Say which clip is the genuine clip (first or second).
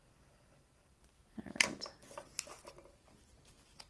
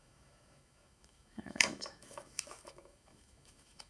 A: first